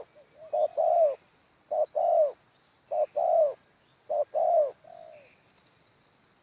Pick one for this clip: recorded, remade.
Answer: recorded